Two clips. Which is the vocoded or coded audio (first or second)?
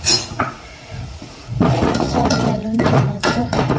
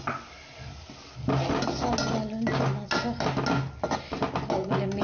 first